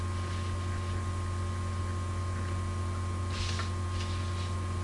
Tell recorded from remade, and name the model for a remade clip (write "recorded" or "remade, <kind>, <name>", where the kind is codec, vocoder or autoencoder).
recorded